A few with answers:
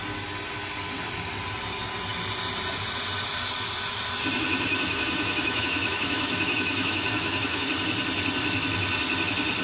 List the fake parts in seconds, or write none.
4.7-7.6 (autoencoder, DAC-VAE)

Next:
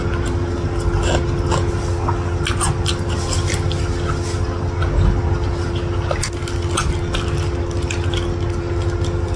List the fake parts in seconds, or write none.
none

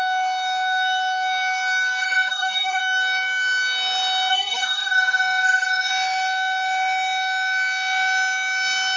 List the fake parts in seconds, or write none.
2.0-2.8 (codec, SNAC); 4.3-5.9

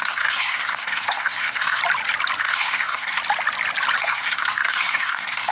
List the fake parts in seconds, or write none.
0.0-1.8 (codec, SNAC); 2.4-3.2; 4.0-5.5

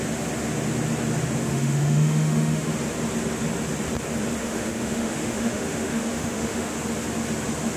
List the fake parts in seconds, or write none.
1.4-2.7 (autoencoder, DAC-VAE); 4.4-6.7

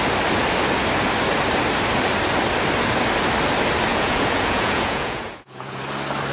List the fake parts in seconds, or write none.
3.9-5.8 (vocoder, Vocos)